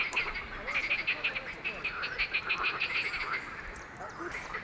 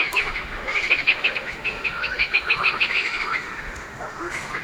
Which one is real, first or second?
first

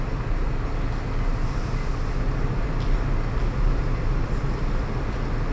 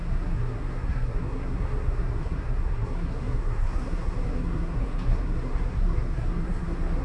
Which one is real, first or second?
first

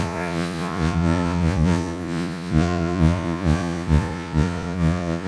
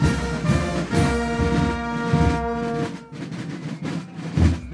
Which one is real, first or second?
second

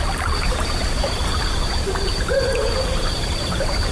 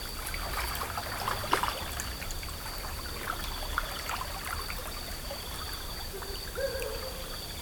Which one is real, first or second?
second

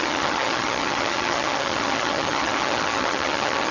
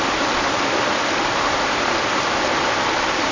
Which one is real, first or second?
second